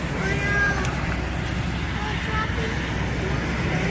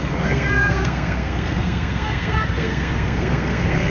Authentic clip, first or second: first